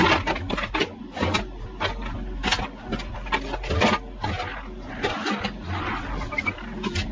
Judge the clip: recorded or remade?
recorded